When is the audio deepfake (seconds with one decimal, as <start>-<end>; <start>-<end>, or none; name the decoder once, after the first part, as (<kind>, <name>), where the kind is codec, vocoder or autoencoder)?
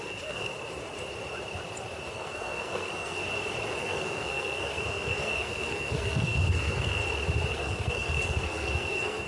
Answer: 0.0-0.5 (codec, SNAC); 2.1-3.2; 3.8-7.0; 7.5-9.3